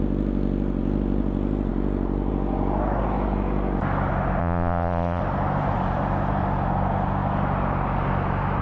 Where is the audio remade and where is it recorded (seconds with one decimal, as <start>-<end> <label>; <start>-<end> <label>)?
0.0-4.4 recorded; 4.4-5.2 remade; 5.2-8.6 recorded